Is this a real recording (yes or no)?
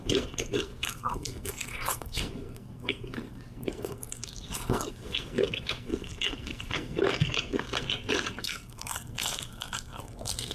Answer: no